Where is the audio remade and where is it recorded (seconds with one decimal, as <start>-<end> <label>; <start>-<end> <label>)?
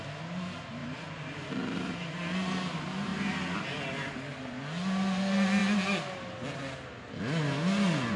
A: 0.0-0.8 recorded; 0.8-2.2 remade; 2.2-8.2 recorded